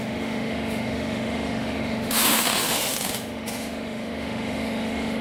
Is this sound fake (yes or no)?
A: yes